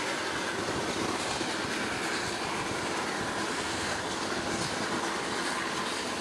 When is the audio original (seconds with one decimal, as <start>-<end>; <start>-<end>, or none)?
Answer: 0.0-3.5; 4.0-6.2